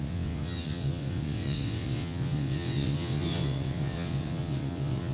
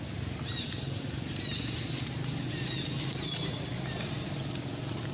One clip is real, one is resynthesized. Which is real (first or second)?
second